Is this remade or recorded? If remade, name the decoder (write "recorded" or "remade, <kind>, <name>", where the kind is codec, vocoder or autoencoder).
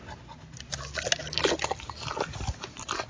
recorded